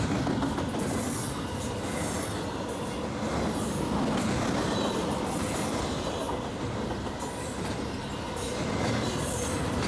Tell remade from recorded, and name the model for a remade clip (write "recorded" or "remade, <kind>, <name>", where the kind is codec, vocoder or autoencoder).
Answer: recorded